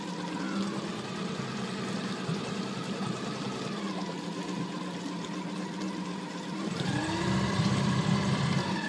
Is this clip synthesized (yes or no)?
no